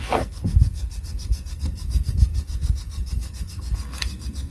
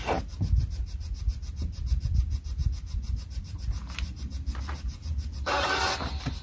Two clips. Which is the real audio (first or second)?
second